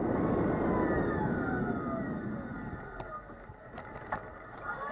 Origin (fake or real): real